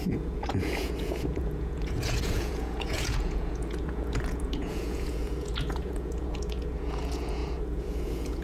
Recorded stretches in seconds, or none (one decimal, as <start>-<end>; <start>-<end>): none